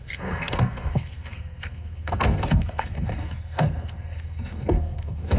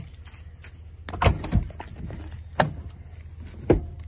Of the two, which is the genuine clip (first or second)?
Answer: second